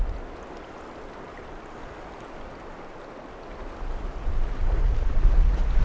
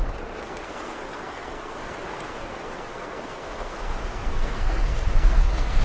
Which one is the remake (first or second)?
second